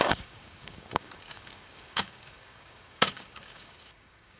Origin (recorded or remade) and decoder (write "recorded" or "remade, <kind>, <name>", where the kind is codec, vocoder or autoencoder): remade, codec, DAC